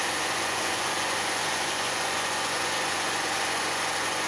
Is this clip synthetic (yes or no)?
yes